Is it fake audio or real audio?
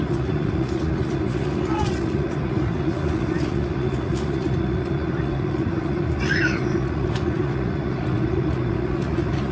fake